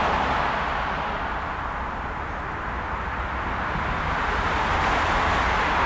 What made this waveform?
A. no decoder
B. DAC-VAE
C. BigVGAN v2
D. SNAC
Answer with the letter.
A